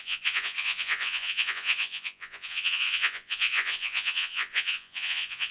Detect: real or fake fake